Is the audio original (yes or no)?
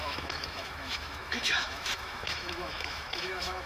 no